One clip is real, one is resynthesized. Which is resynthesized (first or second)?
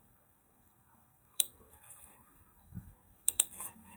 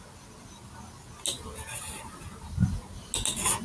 first